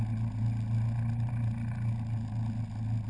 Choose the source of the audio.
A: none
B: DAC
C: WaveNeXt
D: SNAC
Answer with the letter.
A